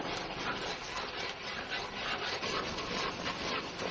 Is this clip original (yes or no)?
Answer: yes